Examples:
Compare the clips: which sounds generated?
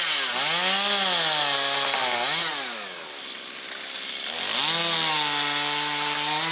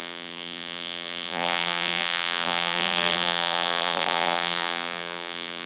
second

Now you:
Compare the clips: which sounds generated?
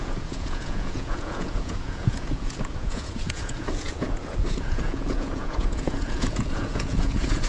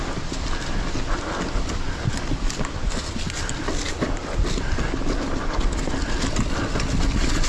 first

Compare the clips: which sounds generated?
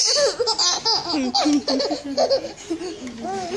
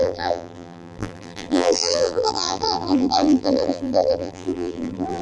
second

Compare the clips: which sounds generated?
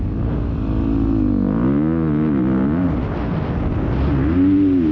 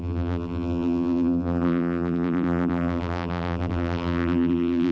second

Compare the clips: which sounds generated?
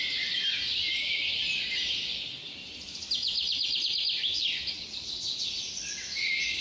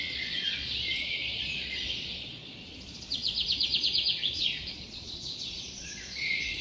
second